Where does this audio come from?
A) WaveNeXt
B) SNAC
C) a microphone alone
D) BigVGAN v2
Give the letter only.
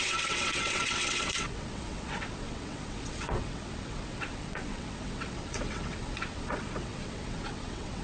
A